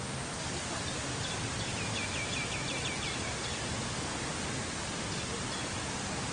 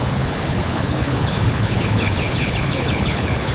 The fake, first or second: second